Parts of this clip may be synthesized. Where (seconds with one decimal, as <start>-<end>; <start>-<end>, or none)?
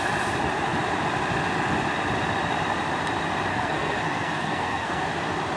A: 3.5-5.0